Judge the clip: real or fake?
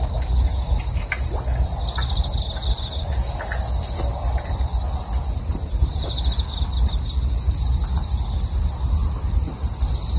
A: real